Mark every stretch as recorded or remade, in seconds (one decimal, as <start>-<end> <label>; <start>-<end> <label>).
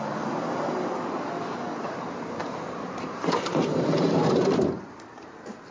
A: 0.0-2.4 recorded; 2.4-5.7 remade